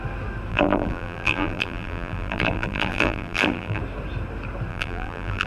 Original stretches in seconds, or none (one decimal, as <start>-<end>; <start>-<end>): 0.0-0.5; 3.8-4.7